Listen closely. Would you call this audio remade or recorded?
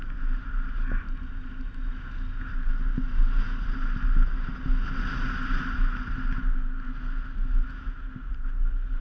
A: recorded